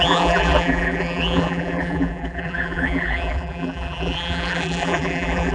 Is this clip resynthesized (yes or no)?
yes